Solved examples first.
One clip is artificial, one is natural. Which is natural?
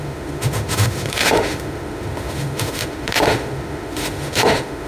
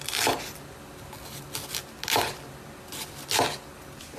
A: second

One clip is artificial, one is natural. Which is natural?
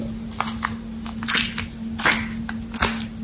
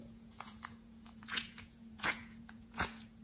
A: first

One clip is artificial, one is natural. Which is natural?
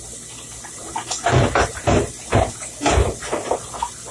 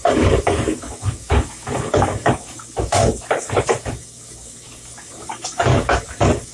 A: first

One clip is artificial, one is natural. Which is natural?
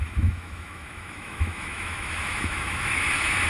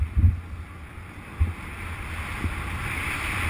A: second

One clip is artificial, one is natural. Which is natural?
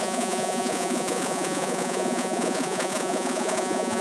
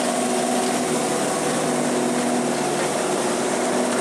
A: second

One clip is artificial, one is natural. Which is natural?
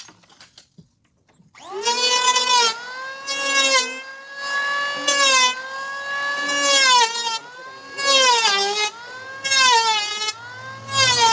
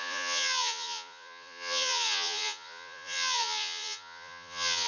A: first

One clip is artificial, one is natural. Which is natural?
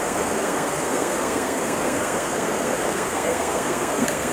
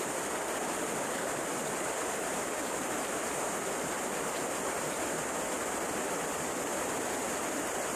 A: second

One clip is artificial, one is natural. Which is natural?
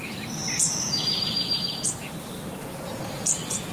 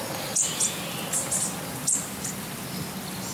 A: second